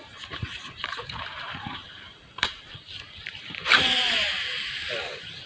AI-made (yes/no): yes